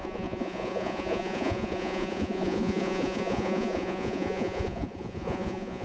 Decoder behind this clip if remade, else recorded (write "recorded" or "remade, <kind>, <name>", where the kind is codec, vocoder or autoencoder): remade, vocoder, Vocos